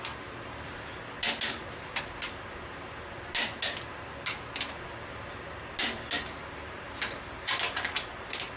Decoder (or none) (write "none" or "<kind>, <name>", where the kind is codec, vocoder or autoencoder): none